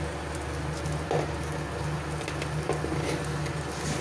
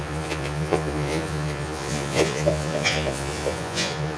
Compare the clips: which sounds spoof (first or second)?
second